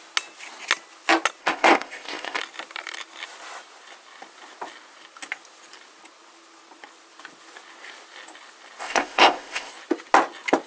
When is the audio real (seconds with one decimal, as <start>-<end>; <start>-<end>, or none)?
0.0-1.4; 2.4-8.8; 9.7-10.7